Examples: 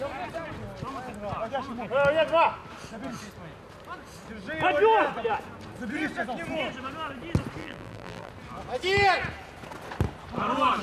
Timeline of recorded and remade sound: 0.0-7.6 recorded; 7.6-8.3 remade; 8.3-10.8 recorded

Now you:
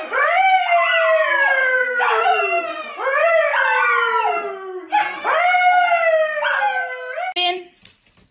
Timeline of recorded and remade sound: 0.0-1.6 recorded; 1.6-2.4 remade; 2.4-8.3 recorded

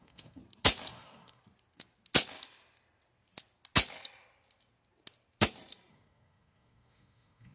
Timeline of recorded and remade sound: 0.0-0.4 remade; 0.4-0.9 recorded; 0.9-1.4 remade; 1.4-5.9 recorded; 5.9-7.5 remade

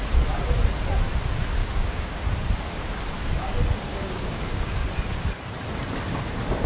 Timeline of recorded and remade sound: 0.0-1.6 recorded; 1.6-2.2 remade; 2.2-3.9 recorded; 3.9-4.7 remade; 4.7-6.7 recorded

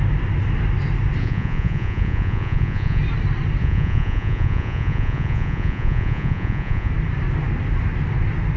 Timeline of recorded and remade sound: 0.0-1.2 recorded; 1.2-3.0 remade; 3.0-3.6 recorded; 3.6-6.9 remade; 6.9-8.6 recorded

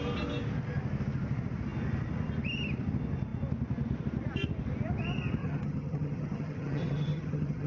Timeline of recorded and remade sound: 0.0-5.4 recorded; 5.4-7.7 remade